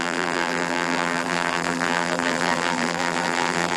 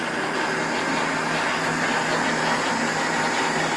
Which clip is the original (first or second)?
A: second